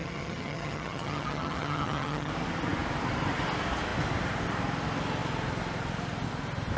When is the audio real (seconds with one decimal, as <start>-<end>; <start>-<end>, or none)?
2.3-6.8